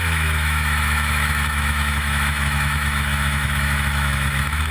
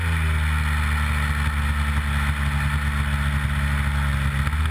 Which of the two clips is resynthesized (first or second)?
first